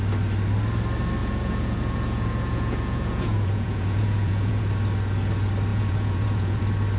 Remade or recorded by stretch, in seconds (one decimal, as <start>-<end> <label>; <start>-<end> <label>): 0.0-1.2 recorded; 1.2-4.6 remade; 4.6-5.7 recorded; 5.7-6.6 remade; 6.6-7.0 recorded